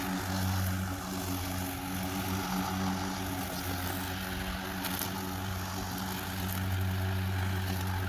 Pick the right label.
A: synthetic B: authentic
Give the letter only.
B